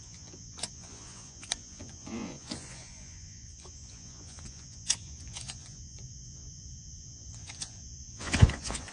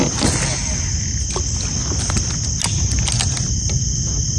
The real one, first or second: second